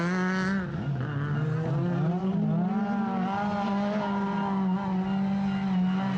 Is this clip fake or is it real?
real